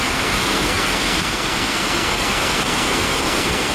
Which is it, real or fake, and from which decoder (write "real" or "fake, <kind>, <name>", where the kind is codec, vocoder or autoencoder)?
fake, codec, SNAC